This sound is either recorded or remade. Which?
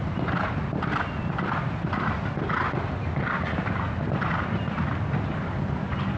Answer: recorded